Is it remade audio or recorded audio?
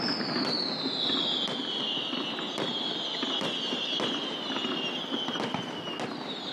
recorded